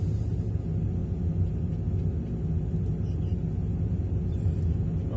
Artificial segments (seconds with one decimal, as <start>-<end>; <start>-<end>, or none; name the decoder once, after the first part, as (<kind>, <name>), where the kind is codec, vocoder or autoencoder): none